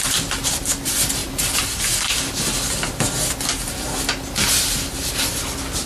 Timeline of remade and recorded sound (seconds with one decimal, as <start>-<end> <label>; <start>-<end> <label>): 0.0-5.9 recorded